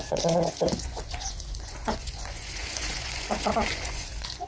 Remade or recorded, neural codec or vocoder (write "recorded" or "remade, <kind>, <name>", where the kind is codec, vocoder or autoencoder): remade, vocoder, Vocos